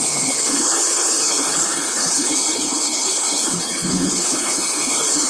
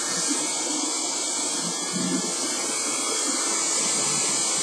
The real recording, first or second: second